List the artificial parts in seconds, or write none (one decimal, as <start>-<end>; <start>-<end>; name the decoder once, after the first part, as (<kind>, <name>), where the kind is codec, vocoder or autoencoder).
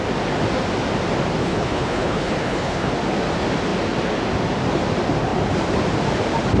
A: 1.4-2.9 (codec, HILCodec)